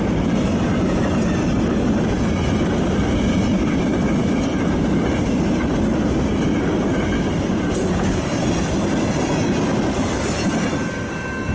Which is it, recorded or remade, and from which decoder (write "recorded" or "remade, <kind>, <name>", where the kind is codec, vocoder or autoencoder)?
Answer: recorded